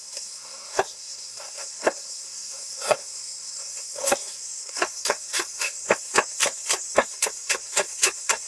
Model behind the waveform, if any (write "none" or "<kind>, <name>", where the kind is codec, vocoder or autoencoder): codec, SNAC